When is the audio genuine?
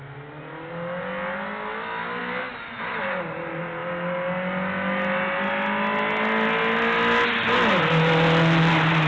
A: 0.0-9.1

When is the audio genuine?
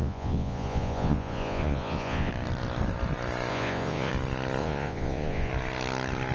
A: 2.3-3.5; 4.1-4.6; 5.5-6.3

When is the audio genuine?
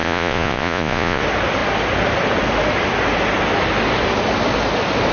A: 1.2-5.1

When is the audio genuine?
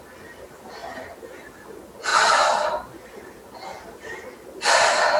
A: 0.0-5.2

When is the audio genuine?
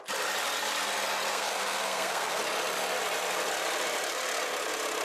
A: 0.0-1.3; 2.4-5.0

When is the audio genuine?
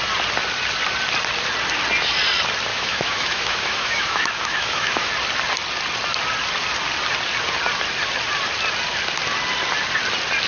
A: 0.0-2.7; 5.1-10.5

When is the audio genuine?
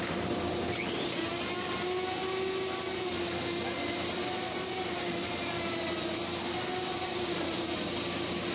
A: 0.0-8.5